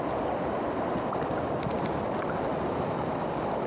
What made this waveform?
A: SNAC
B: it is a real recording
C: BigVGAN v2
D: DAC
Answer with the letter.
B